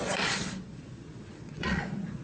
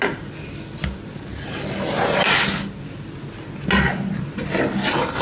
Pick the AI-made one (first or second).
first